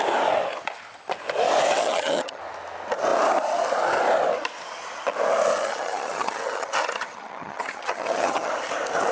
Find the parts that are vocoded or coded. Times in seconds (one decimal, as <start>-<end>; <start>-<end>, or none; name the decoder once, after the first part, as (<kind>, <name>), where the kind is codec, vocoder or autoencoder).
1.8-2.4 (vocoder, HiFi-GAN); 5.6-8.5